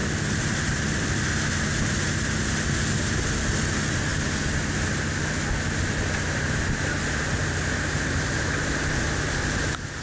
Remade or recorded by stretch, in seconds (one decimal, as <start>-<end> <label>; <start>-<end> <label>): 0.0-10.0 recorded